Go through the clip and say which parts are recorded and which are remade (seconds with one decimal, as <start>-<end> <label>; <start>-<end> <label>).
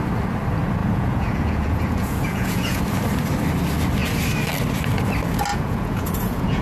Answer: 0.0-0.8 recorded; 0.8-2.8 remade; 2.8-5.5 recorded; 5.5-6.6 remade